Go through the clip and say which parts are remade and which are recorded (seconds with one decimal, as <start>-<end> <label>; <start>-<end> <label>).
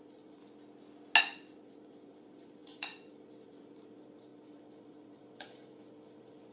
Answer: 0.0-0.4 remade; 0.4-1.2 recorded; 1.2-6.5 remade